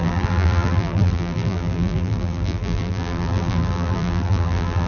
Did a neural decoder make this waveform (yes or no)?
yes